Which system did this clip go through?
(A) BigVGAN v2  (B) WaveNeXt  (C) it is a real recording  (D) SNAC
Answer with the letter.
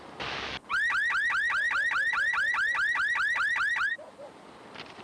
C